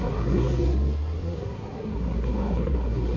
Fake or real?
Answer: fake